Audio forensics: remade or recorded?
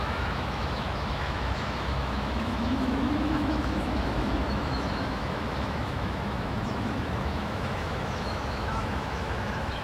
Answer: remade